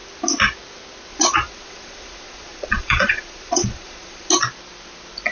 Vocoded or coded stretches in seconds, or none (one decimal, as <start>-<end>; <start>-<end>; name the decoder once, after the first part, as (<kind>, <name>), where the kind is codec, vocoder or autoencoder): 1.1-4.3 (vocoder, Vocos)